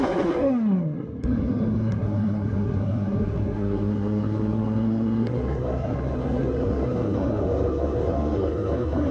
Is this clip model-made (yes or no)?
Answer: yes